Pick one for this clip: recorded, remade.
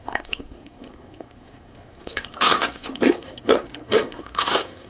remade